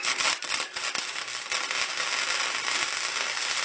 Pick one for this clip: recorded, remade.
recorded